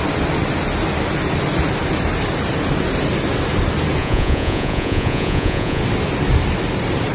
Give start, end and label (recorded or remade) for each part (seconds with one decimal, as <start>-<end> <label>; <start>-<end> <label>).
0.0-4.0 recorded; 4.0-5.8 remade; 5.8-7.1 recorded